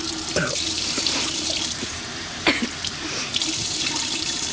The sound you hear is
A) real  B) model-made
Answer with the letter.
B